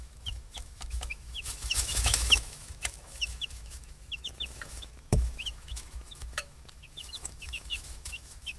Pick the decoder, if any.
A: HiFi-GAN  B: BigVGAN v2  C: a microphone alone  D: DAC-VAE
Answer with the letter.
D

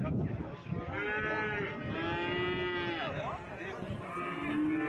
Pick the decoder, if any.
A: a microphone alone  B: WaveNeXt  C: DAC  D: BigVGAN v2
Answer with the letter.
A